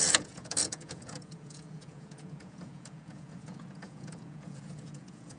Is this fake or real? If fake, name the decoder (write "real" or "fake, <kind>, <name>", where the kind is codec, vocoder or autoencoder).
fake, vocoder, Vocos